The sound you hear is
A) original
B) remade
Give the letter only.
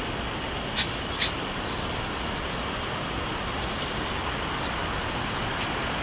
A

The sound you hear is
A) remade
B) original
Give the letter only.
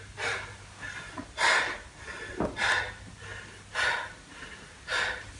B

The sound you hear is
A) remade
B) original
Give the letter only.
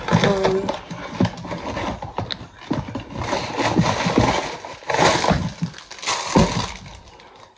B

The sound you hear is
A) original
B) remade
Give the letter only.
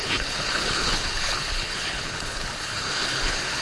B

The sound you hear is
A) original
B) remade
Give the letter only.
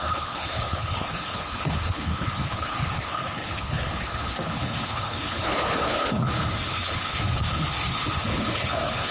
B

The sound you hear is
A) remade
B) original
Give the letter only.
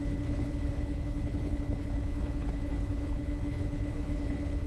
A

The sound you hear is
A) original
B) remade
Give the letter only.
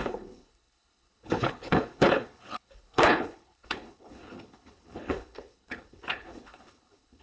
B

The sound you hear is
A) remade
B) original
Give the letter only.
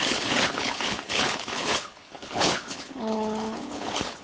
A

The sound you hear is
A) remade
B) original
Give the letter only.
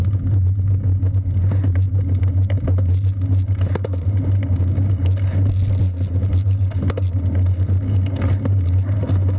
B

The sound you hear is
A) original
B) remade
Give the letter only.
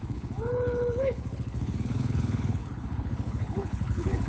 B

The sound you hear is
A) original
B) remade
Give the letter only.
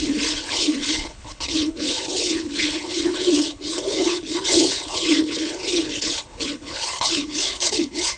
B